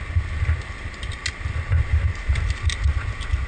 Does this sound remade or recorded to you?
recorded